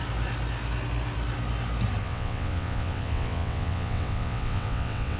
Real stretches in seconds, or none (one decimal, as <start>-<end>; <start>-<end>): 0.0-2.0